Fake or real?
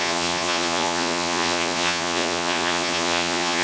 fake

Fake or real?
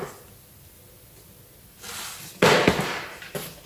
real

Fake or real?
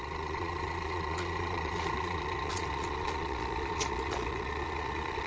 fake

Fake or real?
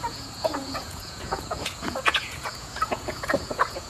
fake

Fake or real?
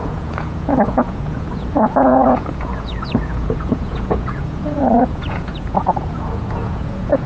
fake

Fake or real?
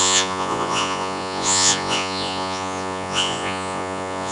fake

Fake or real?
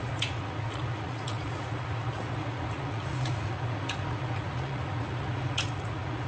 fake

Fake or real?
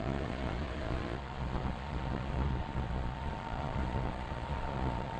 fake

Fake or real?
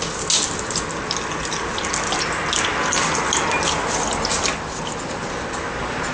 real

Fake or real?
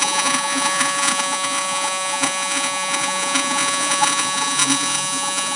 fake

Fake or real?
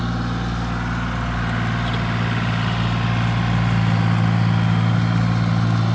real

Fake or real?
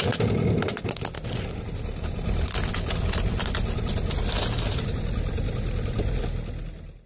real